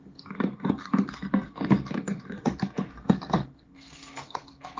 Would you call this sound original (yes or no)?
no